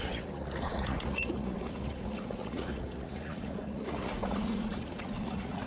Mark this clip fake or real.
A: fake